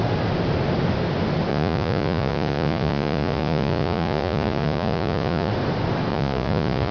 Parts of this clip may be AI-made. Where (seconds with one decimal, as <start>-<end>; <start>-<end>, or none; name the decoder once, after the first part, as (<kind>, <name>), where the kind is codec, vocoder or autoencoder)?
1.5-5.5 (vocoder, Vocos); 6.1-6.9

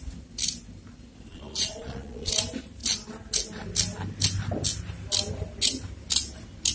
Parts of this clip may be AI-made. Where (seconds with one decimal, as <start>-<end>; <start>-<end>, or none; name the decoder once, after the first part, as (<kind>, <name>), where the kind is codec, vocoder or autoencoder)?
1.3-2.3 (vocoder, Vocos)

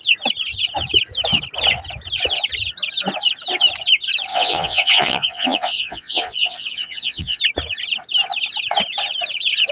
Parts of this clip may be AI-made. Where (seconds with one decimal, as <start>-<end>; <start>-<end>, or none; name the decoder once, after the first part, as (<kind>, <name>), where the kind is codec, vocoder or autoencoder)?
4.3-7.4 (vocoder, Vocos)